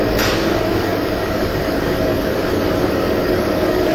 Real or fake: fake